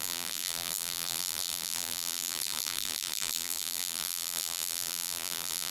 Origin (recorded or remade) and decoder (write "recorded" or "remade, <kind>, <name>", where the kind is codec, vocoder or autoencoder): remade, vocoder, BigVGAN v2